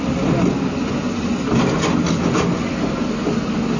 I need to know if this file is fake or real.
real